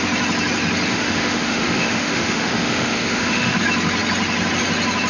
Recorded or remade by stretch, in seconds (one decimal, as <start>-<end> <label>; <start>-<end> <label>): 0.0-0.9 recorded; 0.9-3.6 remade; 3.6-5.1 recorded